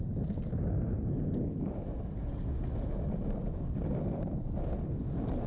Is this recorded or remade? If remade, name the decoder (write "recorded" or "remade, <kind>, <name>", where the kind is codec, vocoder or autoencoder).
recorded